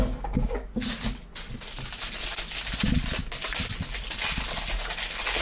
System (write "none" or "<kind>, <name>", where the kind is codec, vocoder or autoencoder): none